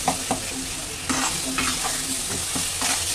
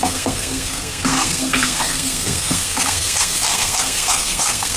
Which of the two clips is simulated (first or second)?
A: second